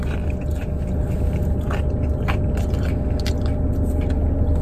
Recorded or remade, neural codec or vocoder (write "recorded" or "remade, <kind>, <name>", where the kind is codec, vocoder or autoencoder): recorded